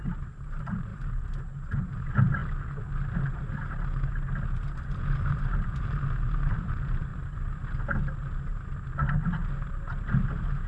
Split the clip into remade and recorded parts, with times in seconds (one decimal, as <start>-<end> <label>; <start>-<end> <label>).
0.0-2.4 remade; 2.4-5.3 recorded; 5.3-7.1 remade; 7.1-10.1 recorded; 10.1-10.7 remade